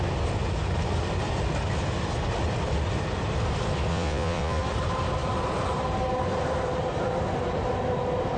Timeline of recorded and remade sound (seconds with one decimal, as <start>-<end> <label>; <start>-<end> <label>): 0.0-3.9 recorded; 3.9-4.6 remade; 4.6-8.4 recorded